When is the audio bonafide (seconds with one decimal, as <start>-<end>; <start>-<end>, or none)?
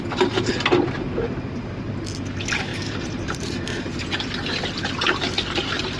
0.0-2.7; 4.0-6.0